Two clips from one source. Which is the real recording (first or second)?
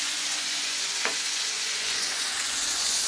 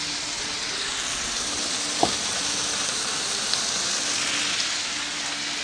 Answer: second